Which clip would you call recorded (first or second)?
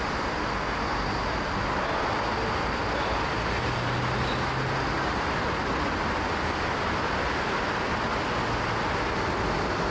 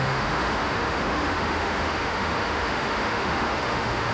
first